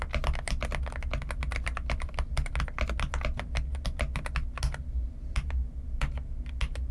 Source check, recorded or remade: recorded